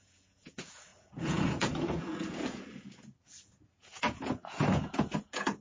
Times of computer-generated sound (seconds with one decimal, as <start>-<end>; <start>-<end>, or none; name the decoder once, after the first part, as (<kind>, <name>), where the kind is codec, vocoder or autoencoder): 0.0-5.6 (vocoder, Vocos)